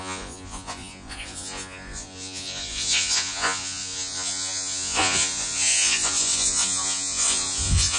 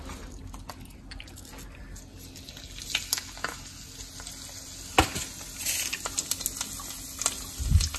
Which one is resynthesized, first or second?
first